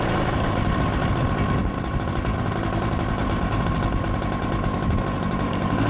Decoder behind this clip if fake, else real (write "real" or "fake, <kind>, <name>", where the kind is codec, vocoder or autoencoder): real